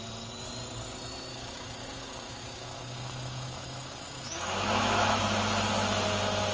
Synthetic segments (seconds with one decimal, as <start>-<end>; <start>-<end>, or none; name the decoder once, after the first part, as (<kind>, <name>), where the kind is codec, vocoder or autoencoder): 1.3-5.2 (autoencoder, DAC-VAE)